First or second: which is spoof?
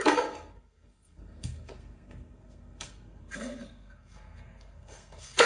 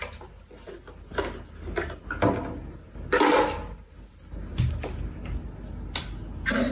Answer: first